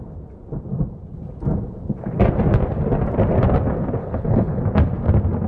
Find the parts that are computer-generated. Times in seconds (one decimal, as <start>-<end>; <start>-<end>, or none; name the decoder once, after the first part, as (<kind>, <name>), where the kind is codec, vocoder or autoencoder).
4.0-4.6 (codec, HILCodec)